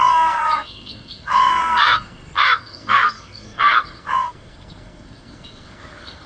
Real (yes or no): no